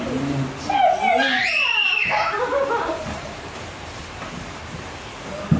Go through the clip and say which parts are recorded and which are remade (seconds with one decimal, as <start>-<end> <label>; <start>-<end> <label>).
0.0-1.4 recorded; 1.4-4.6 remade; 4.6-5.6 recorded